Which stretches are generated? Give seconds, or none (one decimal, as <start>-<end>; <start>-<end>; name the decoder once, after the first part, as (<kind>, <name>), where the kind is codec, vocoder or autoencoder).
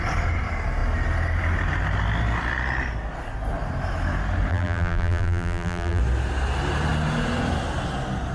4.5-6.0 (vocoder, BigVGAN v2)